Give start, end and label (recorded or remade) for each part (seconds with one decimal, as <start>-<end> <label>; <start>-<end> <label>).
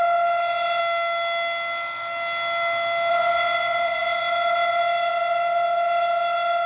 0.0-0.8 remade; 0.8-3.1 recorded; 3.1-6.7 remade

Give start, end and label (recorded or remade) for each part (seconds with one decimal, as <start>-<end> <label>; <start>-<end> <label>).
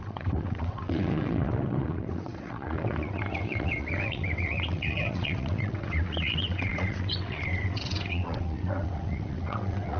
0.0-10.0 remade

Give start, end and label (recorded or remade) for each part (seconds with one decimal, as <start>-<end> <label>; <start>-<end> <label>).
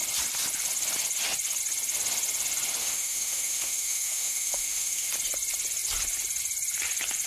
0.0-2.8 recorded; 2.8-5.1 remade; 5.1-7.3 recorded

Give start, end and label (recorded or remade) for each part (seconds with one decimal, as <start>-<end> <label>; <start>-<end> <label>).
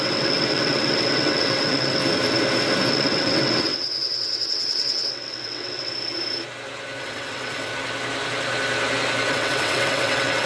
0.0-2.0 remade; 2.0-2.9 recorded; 2.9-5.9 remade; 5.9-7.0 recorded; 7.0-7.7 remade; 7.7-9.3 recorded; 9.3-10.5 remade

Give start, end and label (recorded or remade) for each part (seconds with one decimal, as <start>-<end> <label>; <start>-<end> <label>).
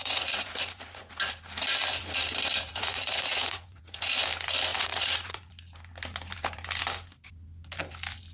0.0-1.0 remade; 1.0-2.7 recorded; 2.7-4.0 remade; 4.0-4.7 recorded; 4.7-5.5 remade; 5.5-8.3 recorded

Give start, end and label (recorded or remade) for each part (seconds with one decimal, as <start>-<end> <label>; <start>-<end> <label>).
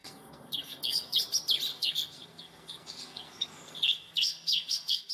0.0-1.2 remade; 1.2-1.7 recorded; 1.7-5.1 remade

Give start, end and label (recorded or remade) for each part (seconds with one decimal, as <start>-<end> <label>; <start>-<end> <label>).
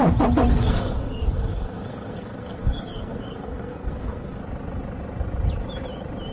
0.0-0.6 recorded; 0.6-4.4 remade; 4.4-6.3 recorded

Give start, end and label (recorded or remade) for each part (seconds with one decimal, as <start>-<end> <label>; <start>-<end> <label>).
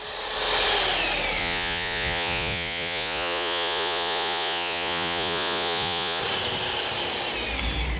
0.0-1.4 recorded; 1.4-6.2 remade; 6.2-8.0 recorded